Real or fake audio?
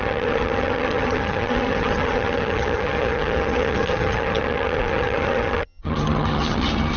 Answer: fake